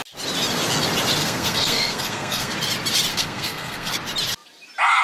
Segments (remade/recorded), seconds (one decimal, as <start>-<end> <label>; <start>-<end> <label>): 0.0-1.2 recorded; 1.2-2.5 remade; 2.5-3.1 recorded; 3.1-3.9 remade; 3.9-5.0 recorded